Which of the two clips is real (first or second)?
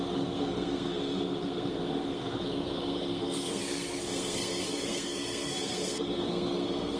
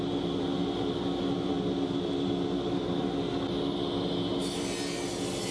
second